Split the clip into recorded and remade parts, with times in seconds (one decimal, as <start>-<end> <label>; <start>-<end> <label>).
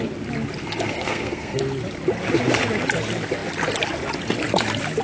0.0-0.6 recorded; 0.6-1.6 remade; 1.6-5.0 recorded